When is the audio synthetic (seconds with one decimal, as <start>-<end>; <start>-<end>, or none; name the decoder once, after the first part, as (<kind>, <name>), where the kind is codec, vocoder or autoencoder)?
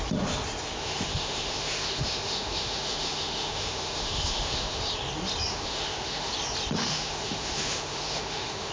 0.8-4.8 (autoencoder, DAC-VAE); 5.5-6.3; 6.8-8.7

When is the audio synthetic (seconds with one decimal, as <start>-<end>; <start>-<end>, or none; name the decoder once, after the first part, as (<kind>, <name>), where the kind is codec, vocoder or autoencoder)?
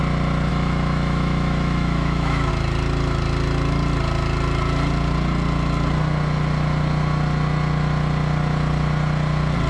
0.5-2.5 (autoencoder, DAC-VAE)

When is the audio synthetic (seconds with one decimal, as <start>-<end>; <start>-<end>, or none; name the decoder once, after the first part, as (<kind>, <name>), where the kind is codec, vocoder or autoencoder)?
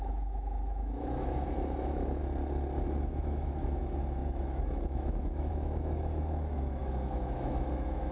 0.0-2.2 (autoencoder, DAC-VAE); 3.0-8.1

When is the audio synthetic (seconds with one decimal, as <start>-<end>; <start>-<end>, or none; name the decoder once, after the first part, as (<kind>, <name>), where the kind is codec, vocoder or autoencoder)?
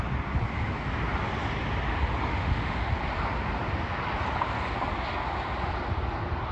2.3-2.9 (autoencoder, DAC-VAE)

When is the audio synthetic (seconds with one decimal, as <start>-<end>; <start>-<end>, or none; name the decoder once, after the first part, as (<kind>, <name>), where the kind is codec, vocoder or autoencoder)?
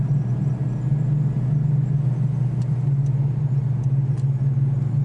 none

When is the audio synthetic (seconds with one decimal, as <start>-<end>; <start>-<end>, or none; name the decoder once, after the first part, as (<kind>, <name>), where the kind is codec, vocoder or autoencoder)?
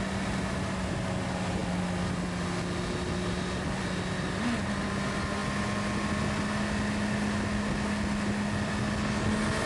none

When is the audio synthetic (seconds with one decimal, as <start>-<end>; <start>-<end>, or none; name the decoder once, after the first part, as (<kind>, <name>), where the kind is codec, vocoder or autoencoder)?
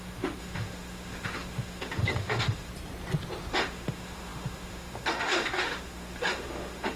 0.0-2.7 (autoencoder, DAC-VAE); 3.5-7.0